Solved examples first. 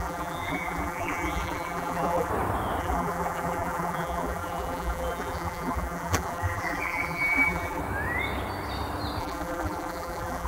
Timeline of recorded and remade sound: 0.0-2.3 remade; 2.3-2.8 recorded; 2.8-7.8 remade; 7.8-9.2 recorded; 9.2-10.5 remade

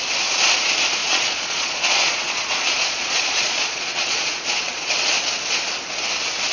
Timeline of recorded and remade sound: 0.0-1.0 recorded; 1.0-4.9 remade; 4.9-6.5 recorded

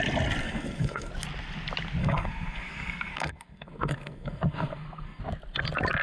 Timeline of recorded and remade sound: 0.0-0.4 recorded; 0.4-1.1 remade; 1.1-2.0 recorded; 2.0-5.2 remade; 5.2-6.0 recorded